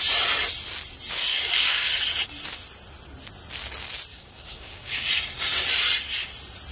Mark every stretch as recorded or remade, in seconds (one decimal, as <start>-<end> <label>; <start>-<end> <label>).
0.0-1.3 recorded; 1.3-1.9 remade; 1.9-4.1 recorded; 4.1-5.1 remade; 5.1-6.7 recorded